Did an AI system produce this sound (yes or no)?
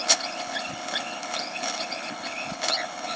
yes